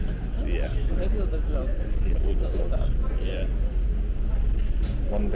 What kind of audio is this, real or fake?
real